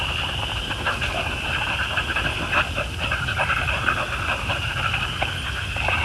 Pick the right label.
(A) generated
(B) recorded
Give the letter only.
B